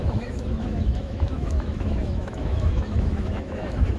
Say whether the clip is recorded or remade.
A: remade